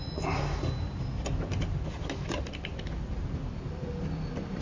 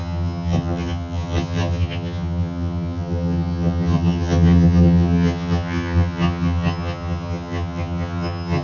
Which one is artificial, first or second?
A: second